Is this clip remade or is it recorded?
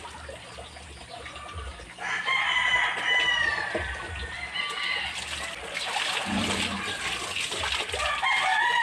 recorded